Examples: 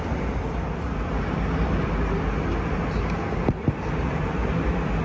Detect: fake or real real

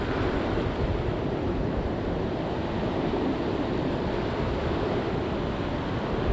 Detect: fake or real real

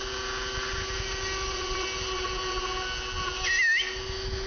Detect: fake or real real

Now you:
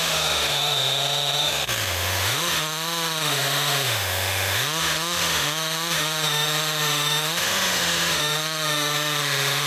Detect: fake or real fake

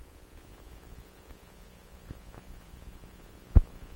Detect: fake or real fake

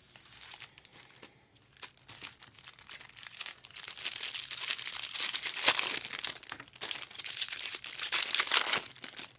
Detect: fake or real real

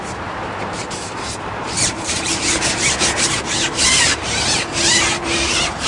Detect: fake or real fake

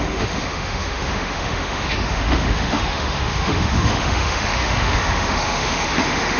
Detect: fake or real fake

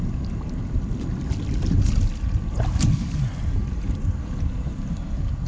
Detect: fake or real real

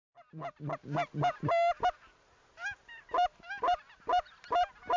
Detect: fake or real real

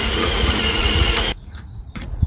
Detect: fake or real fake